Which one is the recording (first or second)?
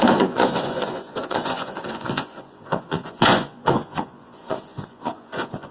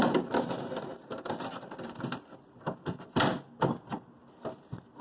second